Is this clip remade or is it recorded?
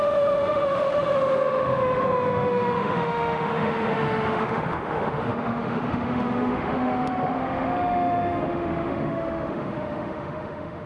remade